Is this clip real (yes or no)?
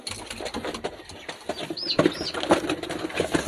yes